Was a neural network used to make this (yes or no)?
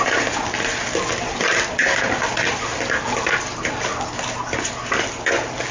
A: no